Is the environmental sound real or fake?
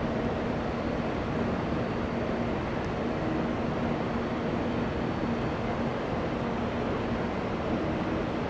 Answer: real